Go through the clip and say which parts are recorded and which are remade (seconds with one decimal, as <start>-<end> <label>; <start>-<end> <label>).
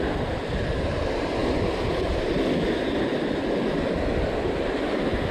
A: 0.0-5.3 recorded